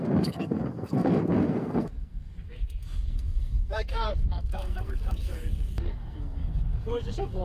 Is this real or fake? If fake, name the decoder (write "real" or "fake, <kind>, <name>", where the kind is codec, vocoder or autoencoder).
fake, codec, SNAC